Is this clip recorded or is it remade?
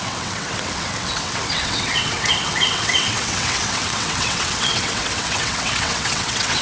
remade